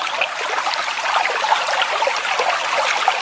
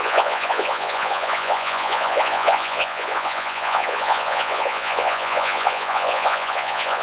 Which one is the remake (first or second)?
second